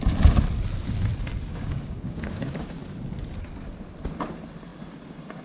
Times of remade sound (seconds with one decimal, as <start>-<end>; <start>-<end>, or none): 1.5-2.8